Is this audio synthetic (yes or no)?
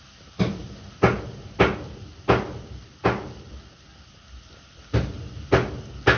no